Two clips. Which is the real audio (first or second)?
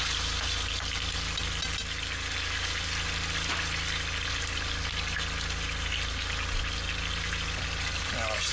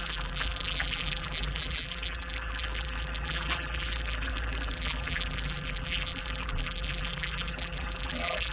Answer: first